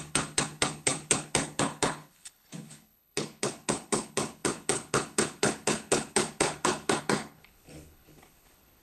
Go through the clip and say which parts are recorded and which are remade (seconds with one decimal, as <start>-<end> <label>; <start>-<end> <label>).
0.0-8.8 remade